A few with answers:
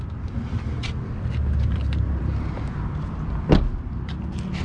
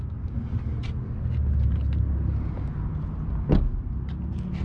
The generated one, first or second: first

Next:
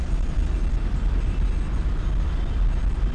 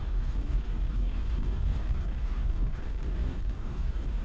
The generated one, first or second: second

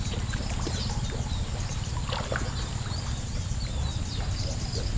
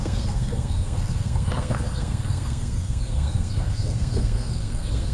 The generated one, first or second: second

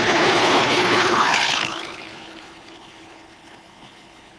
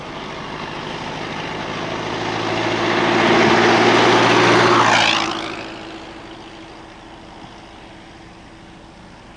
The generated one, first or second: first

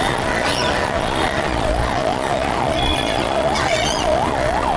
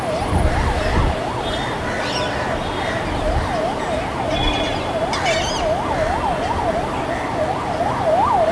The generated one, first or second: first